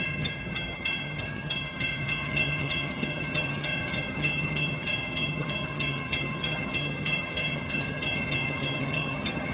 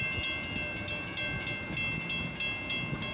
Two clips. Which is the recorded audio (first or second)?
second